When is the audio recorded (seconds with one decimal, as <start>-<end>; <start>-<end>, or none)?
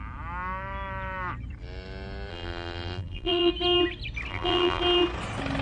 0.0-2.3; 3.5-4.3; 4.8-5.6